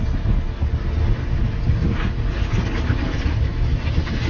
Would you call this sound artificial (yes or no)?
no